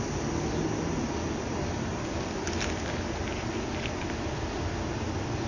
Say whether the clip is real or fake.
real